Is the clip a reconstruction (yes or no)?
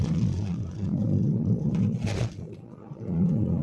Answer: yes